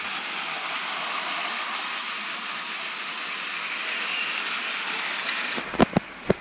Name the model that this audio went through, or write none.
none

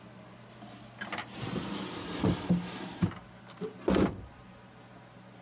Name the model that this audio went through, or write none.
none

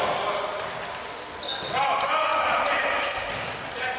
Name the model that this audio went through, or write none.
none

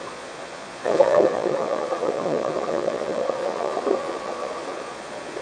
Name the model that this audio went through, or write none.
vocoder, Vocos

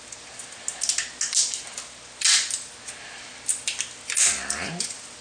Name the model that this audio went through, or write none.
none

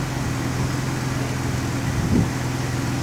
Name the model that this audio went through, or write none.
none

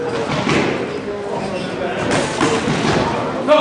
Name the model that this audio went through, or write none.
none